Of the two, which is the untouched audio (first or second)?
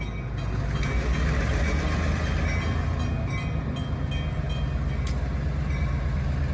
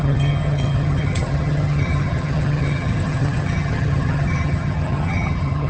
first